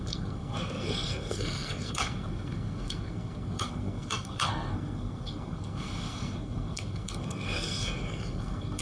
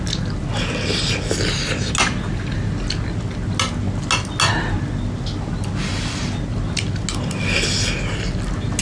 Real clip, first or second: second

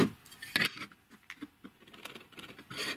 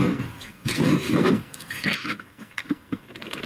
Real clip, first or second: first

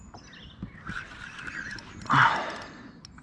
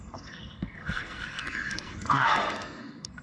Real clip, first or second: first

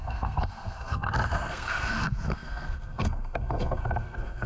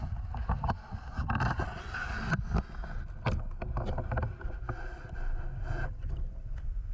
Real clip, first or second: second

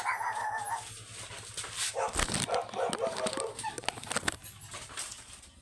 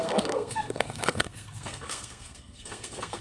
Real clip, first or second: first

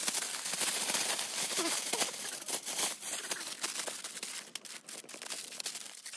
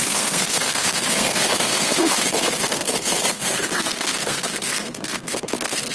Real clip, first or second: first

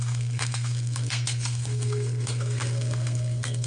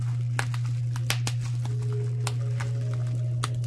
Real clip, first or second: second